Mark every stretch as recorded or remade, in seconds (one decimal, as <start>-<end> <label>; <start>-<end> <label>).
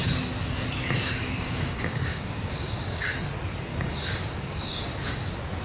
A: 0.0-1.0 recorded; 1.0-3.1 remade; 3.1-3.7 recorded; 3.7-4.8 remade; 4.8-5.6 recorded